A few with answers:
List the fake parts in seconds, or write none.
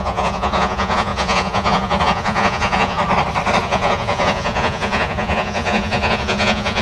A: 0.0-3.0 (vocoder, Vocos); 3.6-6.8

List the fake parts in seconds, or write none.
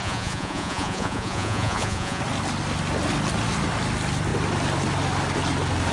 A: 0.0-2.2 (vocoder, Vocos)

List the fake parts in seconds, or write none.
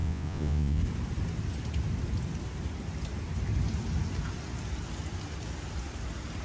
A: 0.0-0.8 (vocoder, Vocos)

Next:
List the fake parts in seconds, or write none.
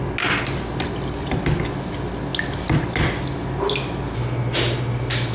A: none